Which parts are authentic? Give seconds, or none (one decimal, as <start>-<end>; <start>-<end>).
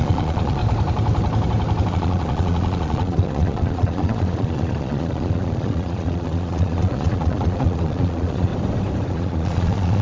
0.6-1.9; 8.5-9.1